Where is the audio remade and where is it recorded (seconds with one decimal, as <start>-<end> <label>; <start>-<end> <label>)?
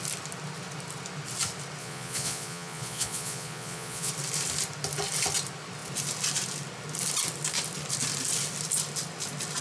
0.0-1.8 recorded; 1.8-4.1 remade; 4.1-9.6 recorded